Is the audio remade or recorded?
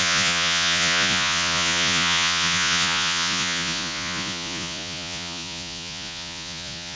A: remade